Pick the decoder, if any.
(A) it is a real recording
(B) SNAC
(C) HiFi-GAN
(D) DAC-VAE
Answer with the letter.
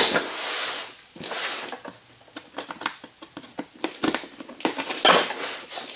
A